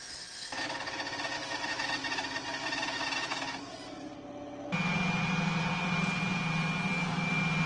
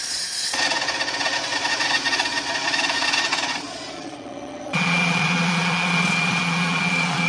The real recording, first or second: first